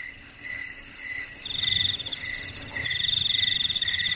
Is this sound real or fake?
fake